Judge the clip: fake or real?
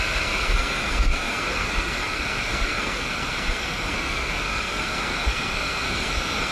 fake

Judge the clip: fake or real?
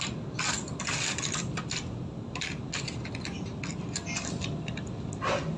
real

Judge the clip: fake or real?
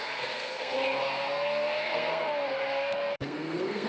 fake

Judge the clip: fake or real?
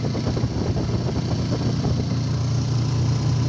real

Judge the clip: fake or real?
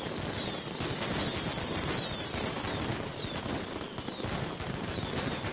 real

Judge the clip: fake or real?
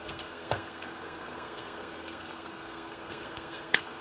fake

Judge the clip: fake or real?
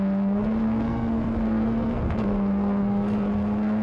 fake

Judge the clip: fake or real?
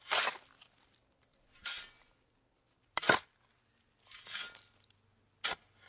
real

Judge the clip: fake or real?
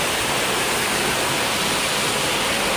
real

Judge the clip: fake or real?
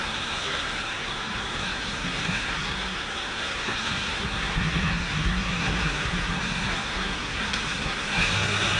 fake